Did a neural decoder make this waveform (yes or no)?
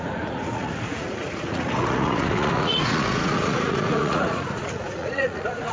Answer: yes